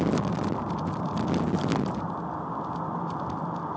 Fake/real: real